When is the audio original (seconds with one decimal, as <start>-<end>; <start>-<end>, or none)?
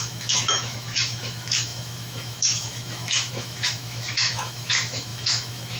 none